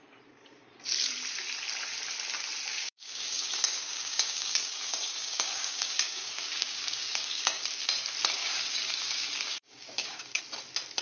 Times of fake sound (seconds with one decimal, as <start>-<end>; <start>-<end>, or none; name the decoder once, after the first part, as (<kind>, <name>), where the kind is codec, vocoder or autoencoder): 2.7-7.6 (codec, DAC); 8.4-10.4